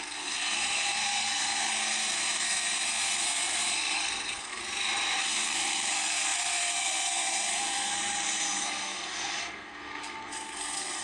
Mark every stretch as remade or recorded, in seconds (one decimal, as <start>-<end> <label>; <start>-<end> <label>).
0.0-4.6 remade; 4.6-5.2 recorded; 5.2-11.0 remade